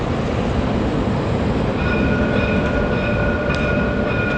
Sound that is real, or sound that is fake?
real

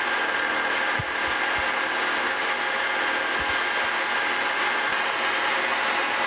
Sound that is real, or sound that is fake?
real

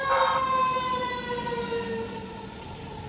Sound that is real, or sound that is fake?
fake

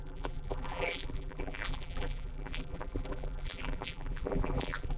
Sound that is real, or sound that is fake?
fake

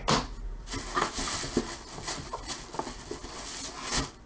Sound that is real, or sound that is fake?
real